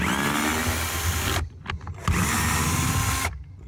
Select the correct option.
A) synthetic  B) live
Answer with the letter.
B